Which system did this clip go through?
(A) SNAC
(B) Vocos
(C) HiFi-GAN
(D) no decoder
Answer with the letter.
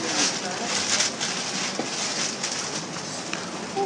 D